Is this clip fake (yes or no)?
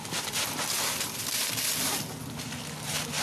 no